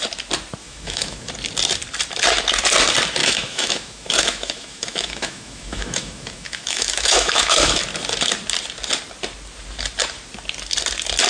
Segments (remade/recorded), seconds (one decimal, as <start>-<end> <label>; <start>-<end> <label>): 0.0-0.6 recorded; 0.6-1.3 remade; 1.3-3.2 recorded; 3.2-7.8 remade; 7.8-11.3 recorded